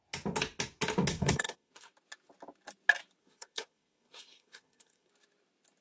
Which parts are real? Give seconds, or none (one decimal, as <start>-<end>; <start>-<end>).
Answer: 0.0-1.1; 1.9-3.2; 5.1-5.8

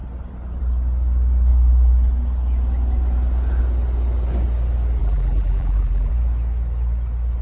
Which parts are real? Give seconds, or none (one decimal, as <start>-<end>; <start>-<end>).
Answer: 0.0-5.0; 6.1-7.4

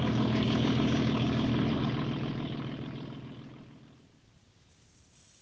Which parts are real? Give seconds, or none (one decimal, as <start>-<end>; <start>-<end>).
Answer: 1.5-4.7

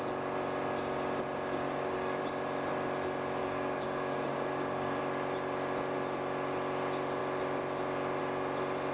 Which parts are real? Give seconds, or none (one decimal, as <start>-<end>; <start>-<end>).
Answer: 0.0-1.6; 2.2-3.4; 5.0-8.9

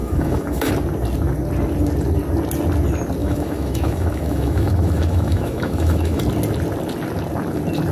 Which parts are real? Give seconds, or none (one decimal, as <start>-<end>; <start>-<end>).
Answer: 0.7-3.2; 6.2-7.9

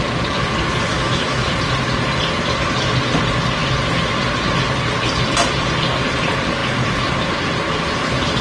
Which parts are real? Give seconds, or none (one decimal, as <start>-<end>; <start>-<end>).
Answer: 0.0-0.9; 1.5-8.4

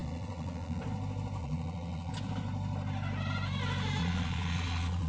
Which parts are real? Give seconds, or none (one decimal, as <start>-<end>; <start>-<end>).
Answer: 0.8-1.4; 2.1-4.0